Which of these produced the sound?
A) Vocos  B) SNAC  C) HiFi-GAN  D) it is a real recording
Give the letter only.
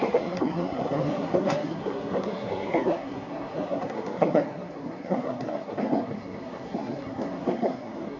B